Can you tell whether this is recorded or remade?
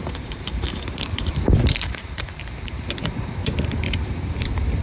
remade